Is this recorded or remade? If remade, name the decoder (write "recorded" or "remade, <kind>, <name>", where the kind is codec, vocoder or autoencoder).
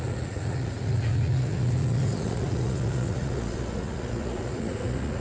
remade, vocoder, Vocos